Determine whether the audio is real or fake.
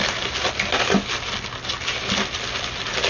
real